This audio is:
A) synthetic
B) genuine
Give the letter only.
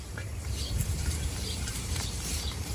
A